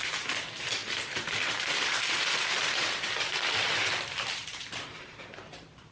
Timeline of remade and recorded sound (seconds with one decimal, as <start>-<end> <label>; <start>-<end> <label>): 0.0-5.9 remade